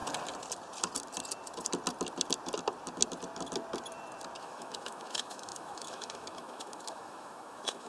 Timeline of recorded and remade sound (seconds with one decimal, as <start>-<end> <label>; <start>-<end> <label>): 0.0-4.4 recorded; 4.4-7.9 remade